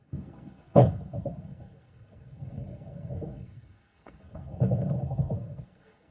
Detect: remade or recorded remade